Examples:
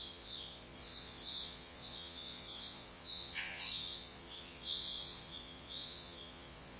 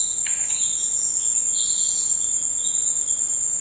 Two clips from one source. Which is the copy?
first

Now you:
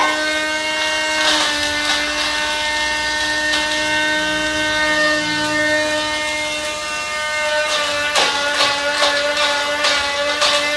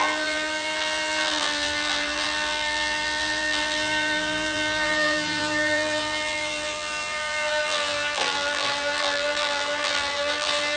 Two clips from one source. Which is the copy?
second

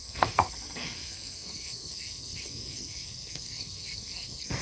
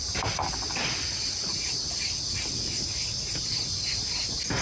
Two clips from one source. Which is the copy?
first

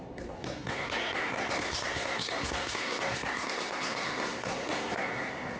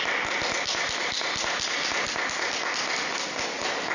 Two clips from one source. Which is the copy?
first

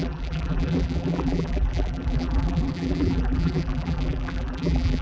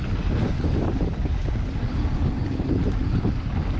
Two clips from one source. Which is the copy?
first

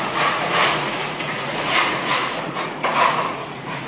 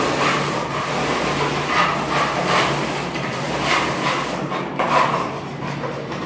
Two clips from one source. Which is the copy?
first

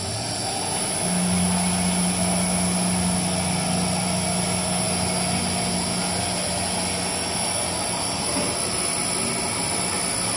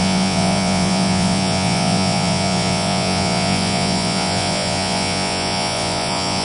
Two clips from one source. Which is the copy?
second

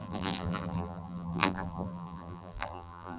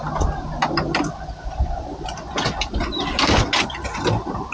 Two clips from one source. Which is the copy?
first